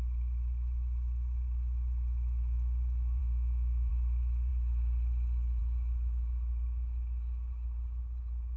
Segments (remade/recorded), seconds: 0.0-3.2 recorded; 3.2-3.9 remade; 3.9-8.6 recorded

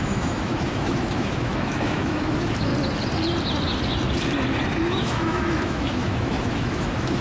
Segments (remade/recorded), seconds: 0.0-2.7 remade; 2.7-4.9 recorded; 4.9-7.2 remade

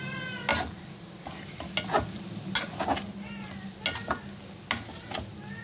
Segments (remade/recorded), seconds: 0.0-5.6 recorded

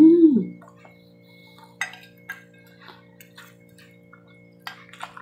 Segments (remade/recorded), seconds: 0.0-5.2 recorded